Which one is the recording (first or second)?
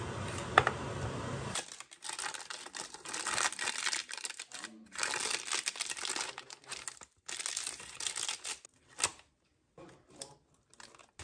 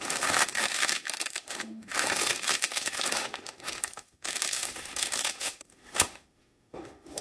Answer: first